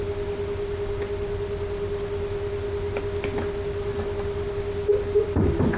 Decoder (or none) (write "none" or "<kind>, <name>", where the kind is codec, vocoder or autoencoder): none